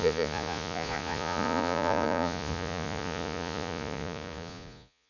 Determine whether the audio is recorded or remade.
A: remade